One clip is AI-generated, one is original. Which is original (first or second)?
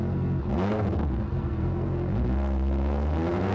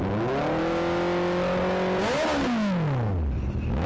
second